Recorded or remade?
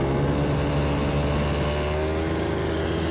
recorded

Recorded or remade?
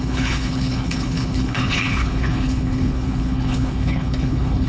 remade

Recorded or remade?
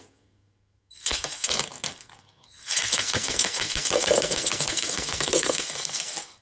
remade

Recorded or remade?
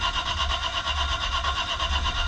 recorded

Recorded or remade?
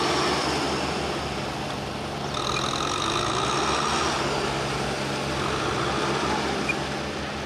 recorded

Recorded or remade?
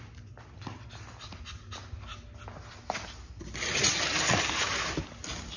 recorded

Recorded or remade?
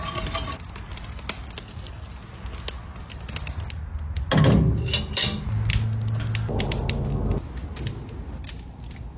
recorded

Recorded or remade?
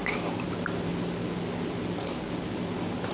recorded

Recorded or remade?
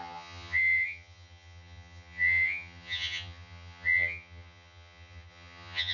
remade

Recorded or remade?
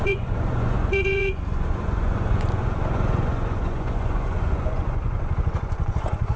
remade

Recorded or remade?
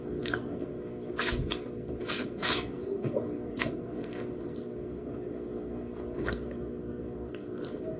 remade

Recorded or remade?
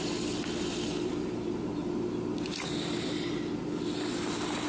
recorded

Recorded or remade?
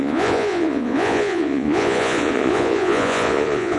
remade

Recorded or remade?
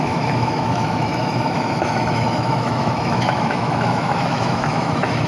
remade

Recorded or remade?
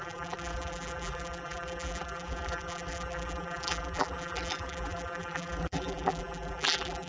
remade